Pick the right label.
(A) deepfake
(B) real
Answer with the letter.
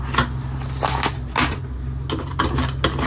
B